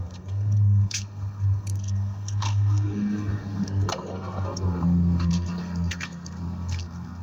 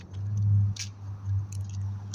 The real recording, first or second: second